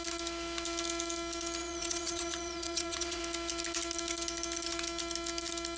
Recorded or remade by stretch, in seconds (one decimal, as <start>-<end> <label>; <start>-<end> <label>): 0.0-1.6 recorded; 1.6-3.2 remade; 3.2-5.8 recorded